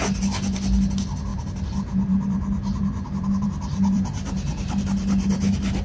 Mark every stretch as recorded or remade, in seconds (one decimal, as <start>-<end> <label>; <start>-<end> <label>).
0.0-1.3 recorded; 1.3-4.8 remade; 4.8-5.8 recorded